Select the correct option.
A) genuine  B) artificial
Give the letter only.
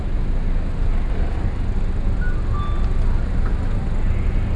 A